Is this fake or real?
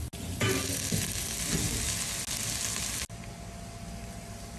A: real